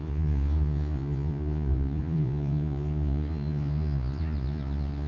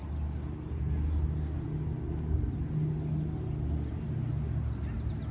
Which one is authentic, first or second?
second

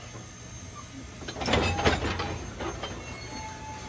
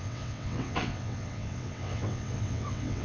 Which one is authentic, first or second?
first